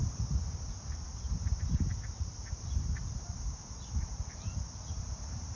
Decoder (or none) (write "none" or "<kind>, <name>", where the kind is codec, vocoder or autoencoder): vocoder, BigVGAN v2